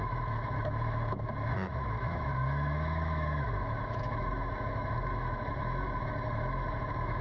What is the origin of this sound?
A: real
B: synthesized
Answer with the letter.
B